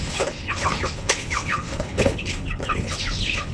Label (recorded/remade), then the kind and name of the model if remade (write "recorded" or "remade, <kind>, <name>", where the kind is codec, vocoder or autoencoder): remade, codec, HILCodec